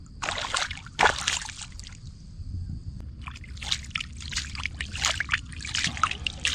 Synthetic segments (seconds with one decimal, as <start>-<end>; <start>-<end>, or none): 0.0-2.8; 3.7-6.5